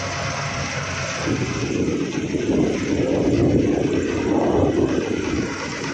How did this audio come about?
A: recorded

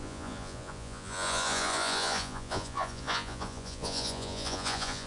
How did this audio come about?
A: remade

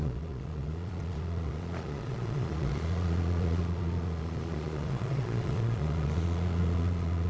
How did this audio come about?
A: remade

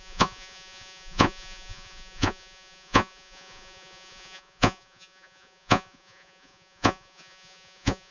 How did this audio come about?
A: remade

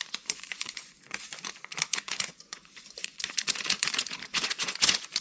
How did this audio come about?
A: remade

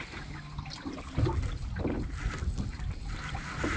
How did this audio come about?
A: recorded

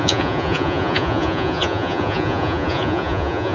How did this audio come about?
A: remade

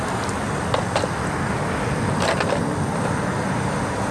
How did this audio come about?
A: recorded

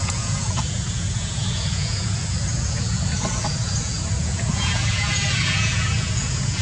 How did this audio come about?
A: remade